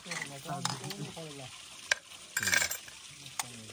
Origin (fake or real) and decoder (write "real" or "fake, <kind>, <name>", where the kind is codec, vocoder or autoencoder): real